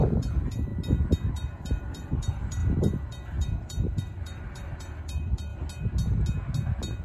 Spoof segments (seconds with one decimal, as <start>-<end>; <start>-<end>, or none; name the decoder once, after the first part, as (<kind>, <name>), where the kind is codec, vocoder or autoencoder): 0.0-0.7 (vocoder, BigVGAN v2); 1.3-5.5